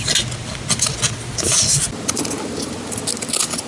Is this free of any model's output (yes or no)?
yes